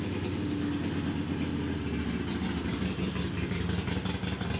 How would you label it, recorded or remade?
recorded